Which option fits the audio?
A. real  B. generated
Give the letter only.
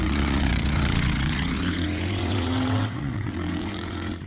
B